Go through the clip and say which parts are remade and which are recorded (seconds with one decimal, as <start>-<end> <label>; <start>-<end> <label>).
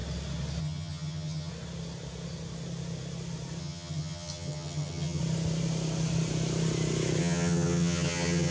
0.0-0.6 recorded; 0.6-1.5 remade; 1.5-3.6 recorded; 3.6-5.2 remade; 5.2-7.2 recorded; 7.2-8.5 remade